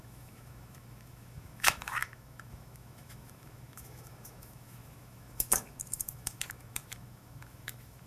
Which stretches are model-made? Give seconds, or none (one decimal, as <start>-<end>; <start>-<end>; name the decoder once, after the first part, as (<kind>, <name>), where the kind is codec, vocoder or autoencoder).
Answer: 0.0-8.1 (autoencoder, DAC-VAE)

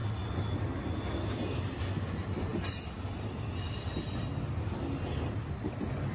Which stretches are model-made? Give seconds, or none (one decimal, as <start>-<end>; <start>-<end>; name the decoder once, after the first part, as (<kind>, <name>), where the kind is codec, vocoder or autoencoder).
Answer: none

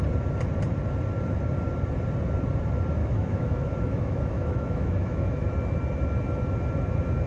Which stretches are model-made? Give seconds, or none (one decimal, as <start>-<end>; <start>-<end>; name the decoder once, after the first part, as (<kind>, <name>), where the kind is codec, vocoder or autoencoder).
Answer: 3.0-5.5 (autoencoder, DAC-VAE)